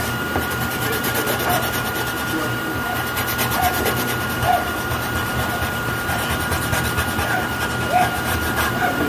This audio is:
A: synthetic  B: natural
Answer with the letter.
A